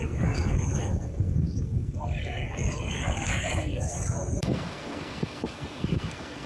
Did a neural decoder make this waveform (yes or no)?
yes